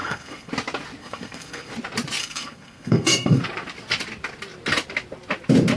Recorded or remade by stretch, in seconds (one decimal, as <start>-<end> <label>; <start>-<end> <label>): 0.0-0.5 remade; 0.5-1.0 recorded; 1.0-1.7 remade; 1.7-2.2 recorded; 2.2-3.4 remade; 3.4-5.8 recorded